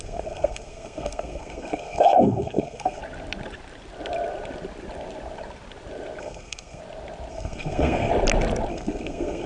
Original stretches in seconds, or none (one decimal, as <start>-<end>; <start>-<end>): 3.0-6.2; 6.8-7.3; 8.1-8.7

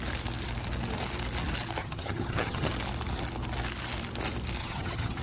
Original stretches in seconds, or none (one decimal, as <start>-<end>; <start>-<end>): 0.0-1.8; 2.7-4.6